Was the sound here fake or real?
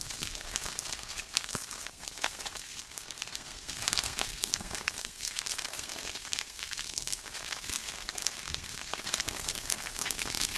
fake